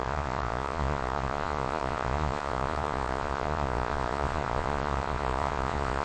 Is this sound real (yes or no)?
no